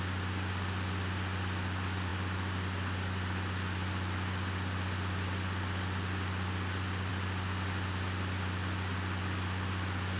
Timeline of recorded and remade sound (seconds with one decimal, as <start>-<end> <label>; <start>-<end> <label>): 0.0-10.2 recorded